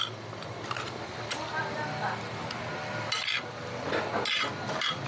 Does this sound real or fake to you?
real